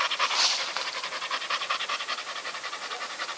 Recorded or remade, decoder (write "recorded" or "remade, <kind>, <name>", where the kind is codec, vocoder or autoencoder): recorded